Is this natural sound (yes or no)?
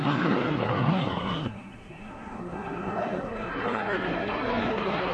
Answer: no